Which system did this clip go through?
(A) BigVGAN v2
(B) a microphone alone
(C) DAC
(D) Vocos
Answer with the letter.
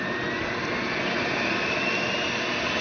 B